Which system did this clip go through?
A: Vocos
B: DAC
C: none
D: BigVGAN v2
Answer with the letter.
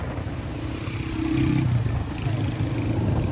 C